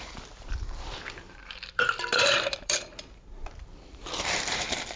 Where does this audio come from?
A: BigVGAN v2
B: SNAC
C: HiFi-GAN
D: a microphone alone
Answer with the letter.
A